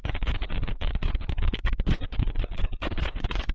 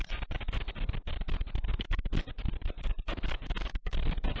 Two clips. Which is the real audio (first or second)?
second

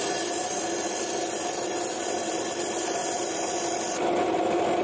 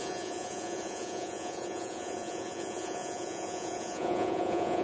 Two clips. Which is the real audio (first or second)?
first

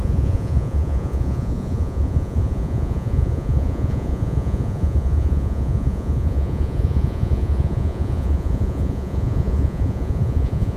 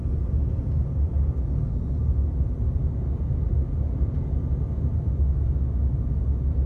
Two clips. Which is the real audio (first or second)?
second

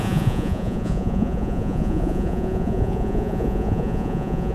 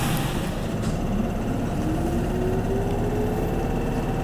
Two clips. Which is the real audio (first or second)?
second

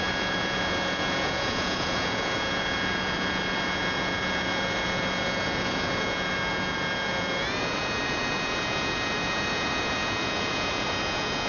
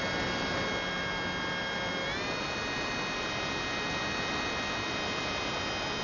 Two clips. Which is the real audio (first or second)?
second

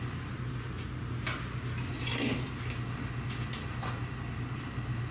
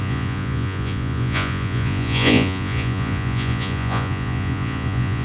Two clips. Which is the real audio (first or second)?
first